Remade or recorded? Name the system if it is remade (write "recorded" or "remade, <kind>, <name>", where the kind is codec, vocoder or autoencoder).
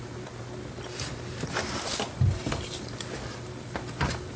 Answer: recorded